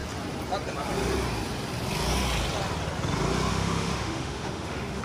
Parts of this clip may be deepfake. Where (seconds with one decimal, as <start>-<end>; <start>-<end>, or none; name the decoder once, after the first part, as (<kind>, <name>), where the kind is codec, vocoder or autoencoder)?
3.5-5.0 (autoencoder, DAC-VAE)